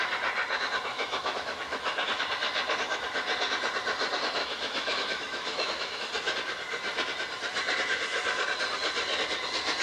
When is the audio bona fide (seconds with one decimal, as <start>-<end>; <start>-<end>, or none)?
0.0-0.9; 2.2-4.4; 6.0-9.8